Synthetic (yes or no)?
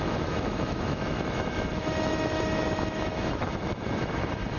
yes